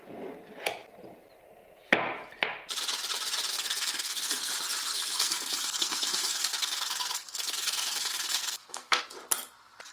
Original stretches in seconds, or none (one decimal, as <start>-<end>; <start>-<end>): 0.0-3.5; 4.5-4.9; 9.0-9.9